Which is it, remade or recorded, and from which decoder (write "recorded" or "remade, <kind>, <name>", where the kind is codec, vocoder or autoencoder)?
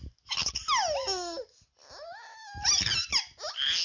recorded